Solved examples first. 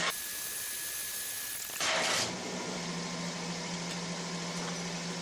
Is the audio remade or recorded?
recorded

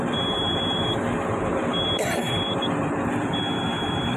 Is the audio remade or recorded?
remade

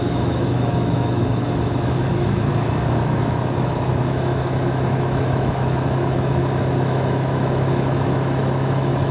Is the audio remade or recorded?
remade